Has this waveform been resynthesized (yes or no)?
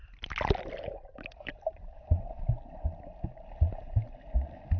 no